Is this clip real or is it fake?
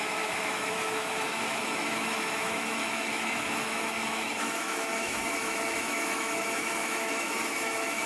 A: fake